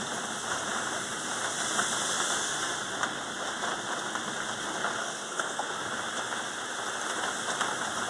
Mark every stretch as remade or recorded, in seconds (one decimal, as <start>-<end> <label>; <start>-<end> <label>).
0.0-5.0 recorded; 5.0-5.8 remade; 5.8-8.1 recorded

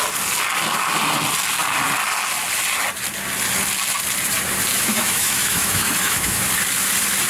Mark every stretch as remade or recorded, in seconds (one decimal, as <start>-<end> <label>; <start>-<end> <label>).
0.0-4.7 recorded; 4.7-6.5 remade; 6.5-7.3 recorded

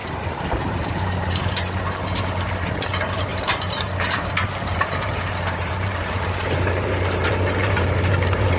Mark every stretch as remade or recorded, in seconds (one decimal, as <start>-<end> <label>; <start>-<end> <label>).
0.0-1.8 remade; 1.8-3.3 recorded; 3.3-8.6 remade

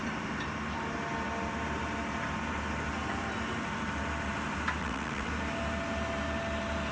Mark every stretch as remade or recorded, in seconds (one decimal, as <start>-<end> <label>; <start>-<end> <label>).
0.0-4.8 recorded; 4.8-5.3 remade; 5.3-6.9 recorded

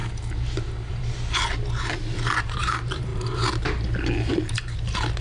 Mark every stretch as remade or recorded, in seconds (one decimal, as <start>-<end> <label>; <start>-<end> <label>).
0.0-2.4 recorded; 2.4-3.1 remade; 3.1-4.3 recorded; 4.3-5.2 remade

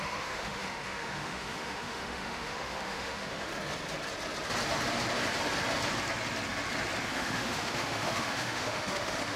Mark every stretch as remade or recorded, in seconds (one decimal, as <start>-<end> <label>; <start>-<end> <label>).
0.0-3.5 remade; 3.5-7.1 recorded; 7.1-9.4 remade

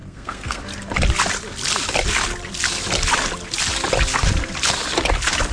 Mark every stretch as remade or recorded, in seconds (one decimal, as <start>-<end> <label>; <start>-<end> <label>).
0.0-0.6 remade; 0.6-5.5 recorded